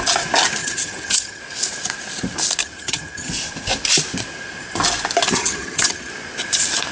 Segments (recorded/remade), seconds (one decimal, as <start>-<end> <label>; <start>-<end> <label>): 0.0-0.6 recorded; 0.6-1.4 remade; 1.4-2.6 recorded; 2.6-3.3 remade; 3.3-5.4 recorded; 5.4-6.1 remade; 6.1-6.9 recorded